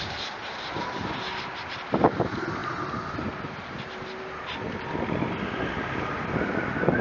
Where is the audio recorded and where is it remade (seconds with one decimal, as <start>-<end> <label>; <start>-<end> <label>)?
0.0-7.0 recorded